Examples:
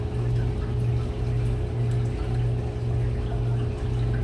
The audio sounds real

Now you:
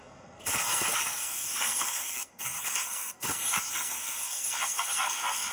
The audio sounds fake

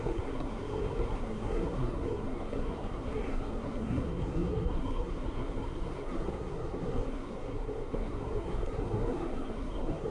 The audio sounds fake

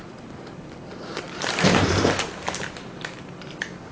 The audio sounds real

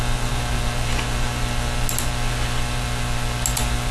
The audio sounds real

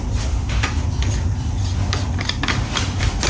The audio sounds real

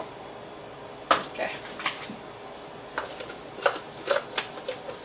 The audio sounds real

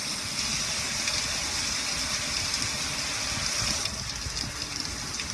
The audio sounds real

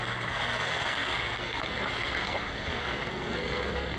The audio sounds fake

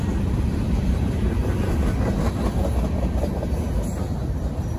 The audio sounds real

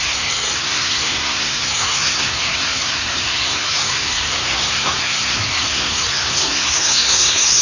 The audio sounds fake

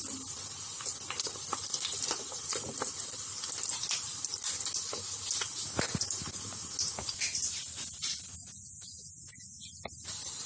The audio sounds real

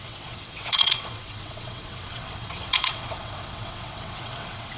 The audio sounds fake